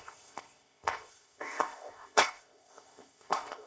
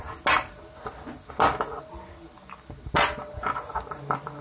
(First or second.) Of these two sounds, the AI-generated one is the first